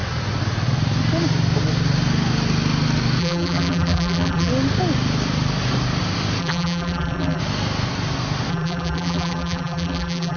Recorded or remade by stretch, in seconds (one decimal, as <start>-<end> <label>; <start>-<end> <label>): 0.0-3.2 recorded; 3.2-4.5 remade; 4.5-6.4 recorded; 6.4-7.4 remade; 7.4-8.5 recorded; 8.5-10.4 remade